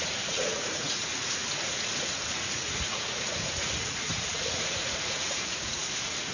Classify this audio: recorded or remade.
remade